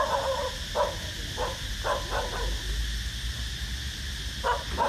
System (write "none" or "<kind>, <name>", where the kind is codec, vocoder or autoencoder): none